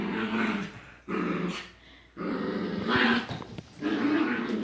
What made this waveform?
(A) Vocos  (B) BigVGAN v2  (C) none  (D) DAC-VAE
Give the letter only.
C